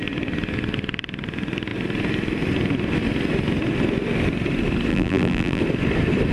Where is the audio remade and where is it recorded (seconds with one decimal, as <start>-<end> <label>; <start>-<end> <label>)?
0.0-4.9 recorded; 4.9-5.6 remade; 5.6-6.3 recorded